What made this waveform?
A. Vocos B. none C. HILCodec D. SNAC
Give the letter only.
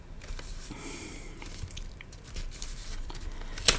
B